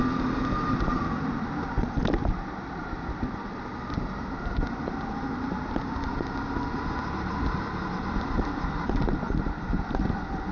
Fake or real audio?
real